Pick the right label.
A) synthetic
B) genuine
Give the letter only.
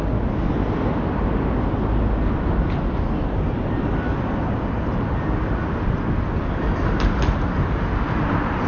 B